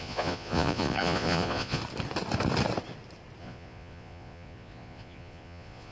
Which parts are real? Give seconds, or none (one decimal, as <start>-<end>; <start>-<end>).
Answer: 1.8-3.4